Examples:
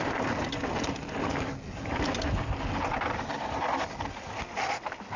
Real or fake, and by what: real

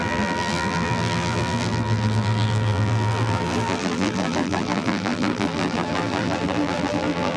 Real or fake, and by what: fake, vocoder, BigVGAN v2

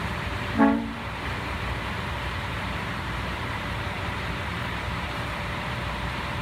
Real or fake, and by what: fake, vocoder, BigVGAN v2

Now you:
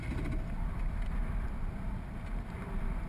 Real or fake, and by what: fake, vocoder, BigVGAN v2